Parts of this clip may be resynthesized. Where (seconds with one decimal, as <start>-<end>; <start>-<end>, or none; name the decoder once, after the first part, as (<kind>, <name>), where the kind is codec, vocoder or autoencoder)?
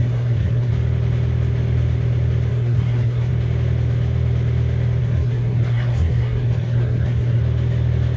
0.0-0.7 (codec, SNAC); 2.5-3.3; 5.0-7.4